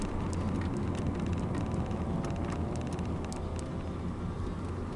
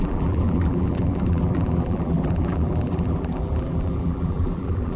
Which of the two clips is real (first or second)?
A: first